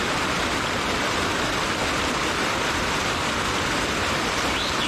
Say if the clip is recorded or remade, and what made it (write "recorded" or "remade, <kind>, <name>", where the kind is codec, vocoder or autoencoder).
recorded